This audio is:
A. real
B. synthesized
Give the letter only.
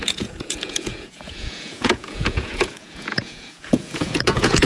B